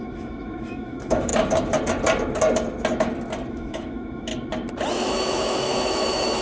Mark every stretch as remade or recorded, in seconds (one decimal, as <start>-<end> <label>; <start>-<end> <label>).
0.0-1.3 remade; 1.3-3.5 recorded; 3.5-4.3 remade; 4.3-4.9 recorded; 4.9-6.4 remade